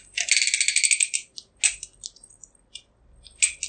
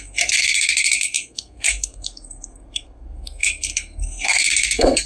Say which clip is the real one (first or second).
first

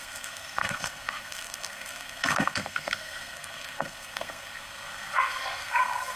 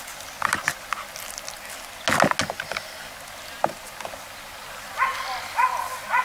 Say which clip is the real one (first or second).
second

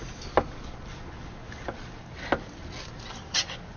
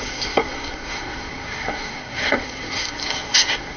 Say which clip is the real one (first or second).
first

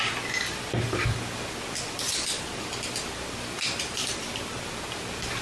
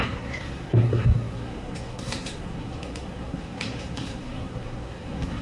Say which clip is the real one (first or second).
first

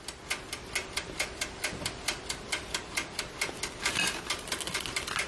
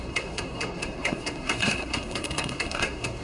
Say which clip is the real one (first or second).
first